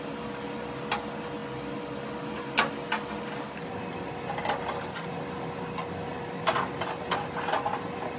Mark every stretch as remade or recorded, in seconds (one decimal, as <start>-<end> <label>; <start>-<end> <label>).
0.0-8.2 recorded